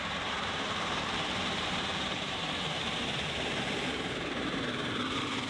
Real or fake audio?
fake